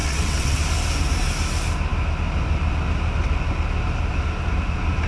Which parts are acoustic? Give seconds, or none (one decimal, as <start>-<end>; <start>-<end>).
0.6-5.1

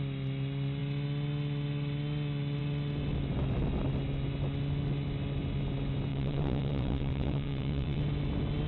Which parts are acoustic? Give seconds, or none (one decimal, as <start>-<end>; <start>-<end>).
0.0-6.1; 8.0-8.7